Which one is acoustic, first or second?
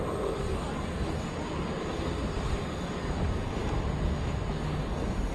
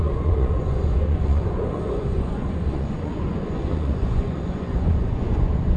first